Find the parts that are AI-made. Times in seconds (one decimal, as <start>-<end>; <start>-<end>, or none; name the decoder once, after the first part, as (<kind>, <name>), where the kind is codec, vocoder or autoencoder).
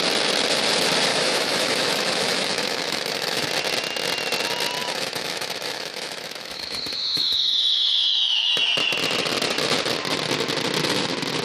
1.1-3.5 (autoencoder, DAC-VAE); 4.8-8.5